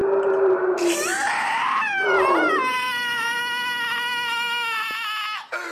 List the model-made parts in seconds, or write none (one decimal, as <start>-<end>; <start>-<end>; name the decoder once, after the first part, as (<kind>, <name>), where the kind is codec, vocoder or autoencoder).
0.0-3.4 (vocoder, BigVGAN v2)